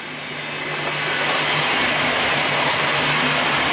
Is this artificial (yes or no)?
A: no